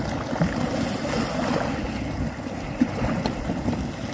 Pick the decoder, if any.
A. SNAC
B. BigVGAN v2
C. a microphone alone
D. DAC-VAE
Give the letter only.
C